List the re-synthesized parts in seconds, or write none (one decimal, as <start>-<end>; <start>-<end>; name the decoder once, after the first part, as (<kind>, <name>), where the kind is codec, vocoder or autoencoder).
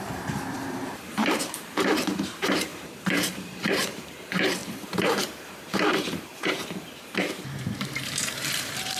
0.0-9.0 (vocoder, BigVGAN v2)